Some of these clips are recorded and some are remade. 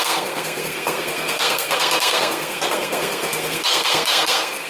remade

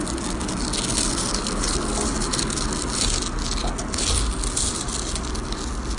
recorded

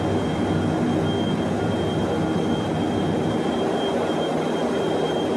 recorded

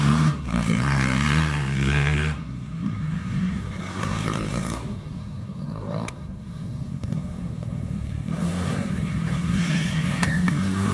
remade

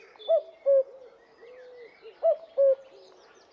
recorded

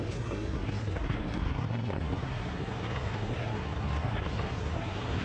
remade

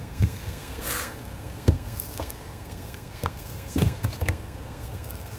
remade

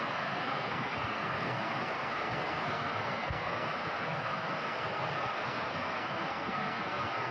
remade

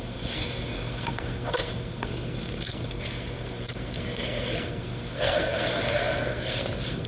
remade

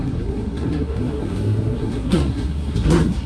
remade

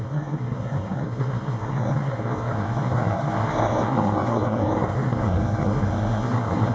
remade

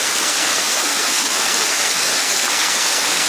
remade